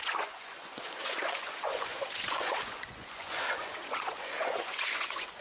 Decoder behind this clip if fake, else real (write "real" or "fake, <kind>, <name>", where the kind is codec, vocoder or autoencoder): fake, vocoder, Vocos